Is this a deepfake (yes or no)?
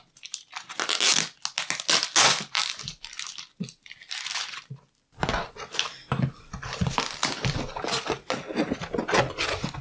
no